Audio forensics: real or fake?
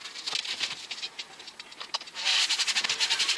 real